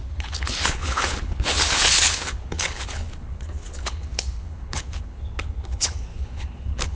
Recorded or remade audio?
remade